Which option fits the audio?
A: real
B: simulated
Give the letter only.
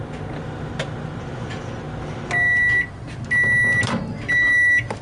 A